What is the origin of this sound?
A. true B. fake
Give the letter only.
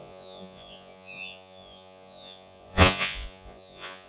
B